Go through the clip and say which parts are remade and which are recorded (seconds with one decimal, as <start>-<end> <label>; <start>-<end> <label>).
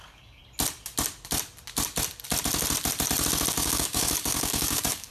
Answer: 0.0-0.4 remade; 0.4-3.5 recorded; 3.5-5.1 remade